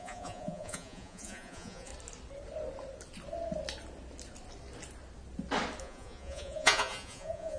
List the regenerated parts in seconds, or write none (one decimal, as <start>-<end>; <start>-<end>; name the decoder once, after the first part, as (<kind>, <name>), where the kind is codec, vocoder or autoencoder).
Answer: 0.0-1.9 (vocoder, Vocos); 5.8-7.6